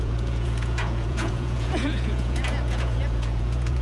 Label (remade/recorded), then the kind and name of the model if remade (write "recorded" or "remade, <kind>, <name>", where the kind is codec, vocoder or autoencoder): remade, vocoder, Vocos